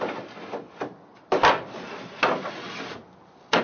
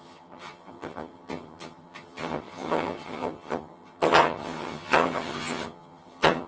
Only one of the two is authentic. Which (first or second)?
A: first